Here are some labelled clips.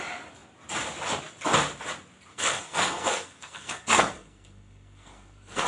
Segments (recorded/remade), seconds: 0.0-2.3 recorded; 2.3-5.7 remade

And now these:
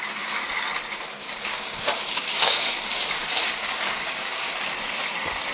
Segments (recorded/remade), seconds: 0.0-1.2 recorded; 1.2-4.5 remade; 4.5-5.5 recorded

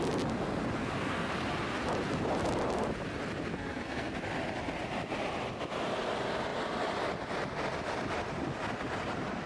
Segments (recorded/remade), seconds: 0.0-0.8 recorded; 0.8-1.3 remade; 1.3-3.5 recorded; 3.5-4.2 remade; 4.2-9.5 recorded

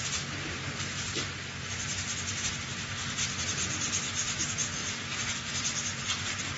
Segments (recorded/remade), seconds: 0.0-6.6 remade

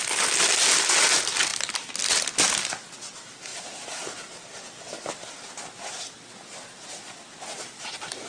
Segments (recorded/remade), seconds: 0.0-8.3 recorded

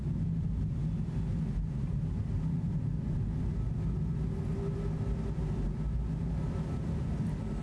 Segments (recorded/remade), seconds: 0.0-7.6 recorded

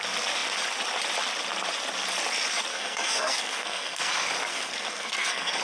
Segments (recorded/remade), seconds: 0.0-2.7 recorded; 2.7-4.1 remade; 4.1-4.5 recorded; 4.5-5.6 remade

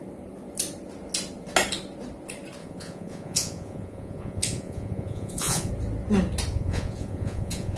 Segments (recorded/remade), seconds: 0.0-2.6 recorded; 2.6-5.7 remade; 5.7-6.5 recorded; 6.5-7.8 remade